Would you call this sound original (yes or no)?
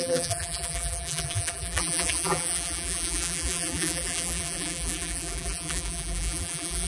no